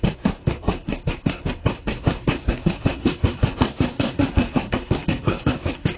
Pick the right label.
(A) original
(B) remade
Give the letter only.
B